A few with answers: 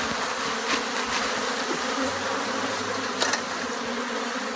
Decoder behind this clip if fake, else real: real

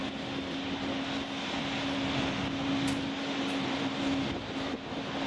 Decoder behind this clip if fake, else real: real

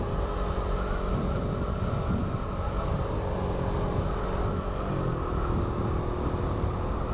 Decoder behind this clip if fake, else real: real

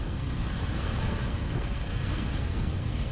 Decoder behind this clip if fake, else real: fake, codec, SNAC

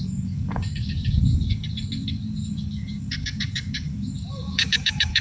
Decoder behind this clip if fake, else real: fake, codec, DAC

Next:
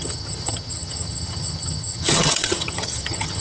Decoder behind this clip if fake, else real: fake, vocoder, HiFi-GAN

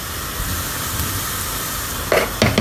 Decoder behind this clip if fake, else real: real